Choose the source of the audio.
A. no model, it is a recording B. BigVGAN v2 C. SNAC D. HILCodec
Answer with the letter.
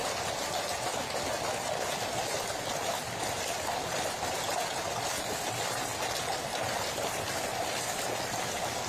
A